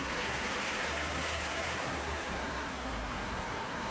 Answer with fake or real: fake